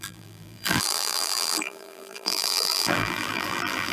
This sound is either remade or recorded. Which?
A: remade